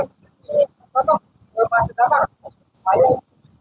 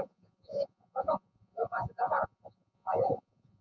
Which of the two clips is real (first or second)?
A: first